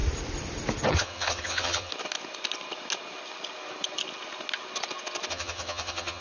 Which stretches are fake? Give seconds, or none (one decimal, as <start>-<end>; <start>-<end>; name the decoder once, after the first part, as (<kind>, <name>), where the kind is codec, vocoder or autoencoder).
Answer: 0.9-1.9 (vocoder, HiFi-GAN); 5.3-6.2